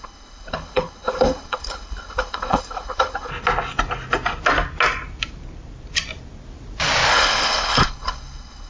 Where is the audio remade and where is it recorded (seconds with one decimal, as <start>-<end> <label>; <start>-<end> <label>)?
0.0-3.3 remade; 3.3-7.1 recorded; 7.1-8.7 remade